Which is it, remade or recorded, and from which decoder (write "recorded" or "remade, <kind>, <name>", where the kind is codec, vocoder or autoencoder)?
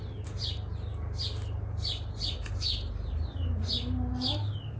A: recorded